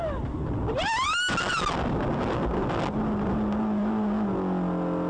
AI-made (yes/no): no